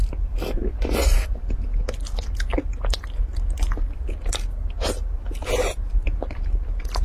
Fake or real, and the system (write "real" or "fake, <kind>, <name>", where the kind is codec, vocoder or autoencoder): real